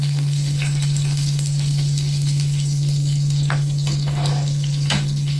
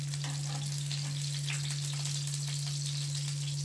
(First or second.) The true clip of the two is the second